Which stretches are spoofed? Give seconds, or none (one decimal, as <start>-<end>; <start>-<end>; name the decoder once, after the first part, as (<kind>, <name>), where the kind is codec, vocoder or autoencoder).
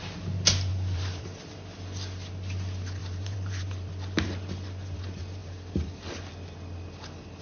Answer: 0.7-1.5 (vocoder, BigVGAN v2); 3.0-3.9